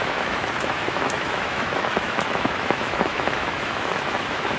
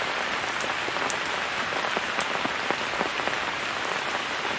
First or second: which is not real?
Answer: first